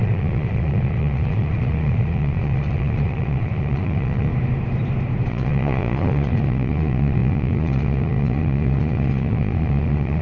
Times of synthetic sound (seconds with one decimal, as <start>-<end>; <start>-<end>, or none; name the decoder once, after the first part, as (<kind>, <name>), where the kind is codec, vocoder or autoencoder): 0.0-4.3 (vocoder, Vocos); 5.3-10.2